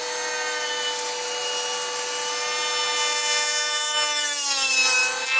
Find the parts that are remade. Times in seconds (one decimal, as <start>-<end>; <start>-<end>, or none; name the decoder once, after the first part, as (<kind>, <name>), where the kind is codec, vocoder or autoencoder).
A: none